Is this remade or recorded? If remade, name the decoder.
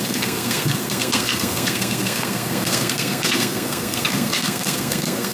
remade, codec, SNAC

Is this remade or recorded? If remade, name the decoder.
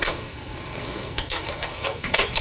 remade, codec, SNAC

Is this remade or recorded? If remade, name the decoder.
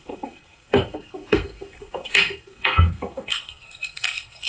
remade, codec, SNAC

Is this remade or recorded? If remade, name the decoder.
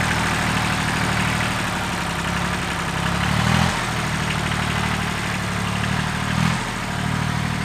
recorded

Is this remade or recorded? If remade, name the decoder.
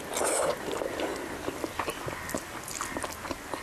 recorded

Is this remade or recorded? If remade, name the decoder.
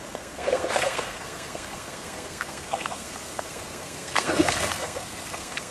remade, codec, SNAC